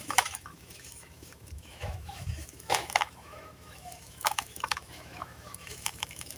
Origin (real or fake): fake